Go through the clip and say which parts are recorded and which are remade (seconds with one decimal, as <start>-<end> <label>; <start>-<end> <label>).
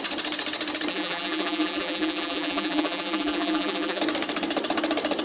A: 0.0-0.9 recorded; 0.9-4.0 remade; 4.0-5.2 recorded